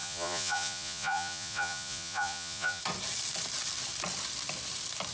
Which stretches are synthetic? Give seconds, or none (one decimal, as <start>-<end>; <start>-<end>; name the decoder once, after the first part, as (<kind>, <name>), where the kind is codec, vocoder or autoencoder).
0.0-2.8 (vocoder, Vocos)